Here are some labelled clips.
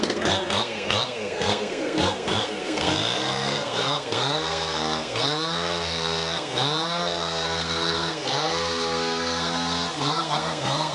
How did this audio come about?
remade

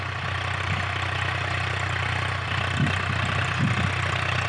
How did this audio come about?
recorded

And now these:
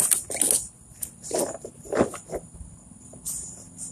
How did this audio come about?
recorded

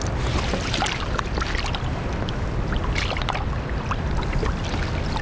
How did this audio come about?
recorded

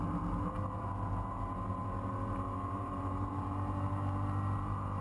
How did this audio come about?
remade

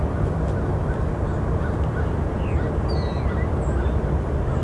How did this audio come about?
recorded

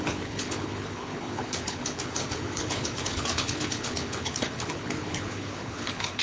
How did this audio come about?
remade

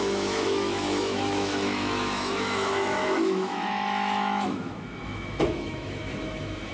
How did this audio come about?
remade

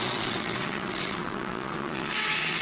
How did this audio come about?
remade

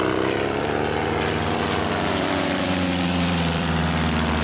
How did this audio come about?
remade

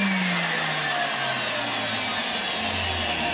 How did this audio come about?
recorded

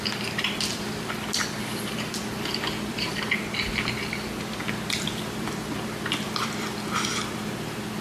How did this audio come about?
remade